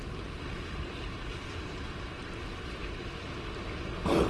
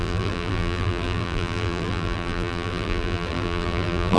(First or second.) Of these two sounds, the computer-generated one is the second